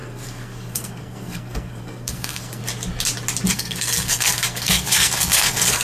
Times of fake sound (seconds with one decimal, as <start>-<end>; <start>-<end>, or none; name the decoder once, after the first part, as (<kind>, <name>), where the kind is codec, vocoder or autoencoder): 0.0-2.6 (codec, SNAC); 3.5-5.8